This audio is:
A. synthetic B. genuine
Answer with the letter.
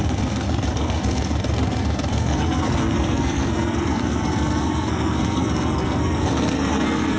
A